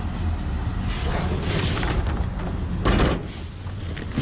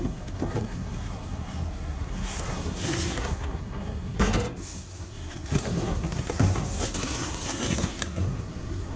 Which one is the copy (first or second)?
second